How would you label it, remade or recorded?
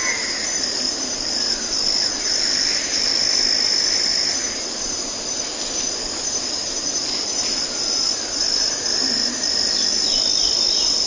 recorded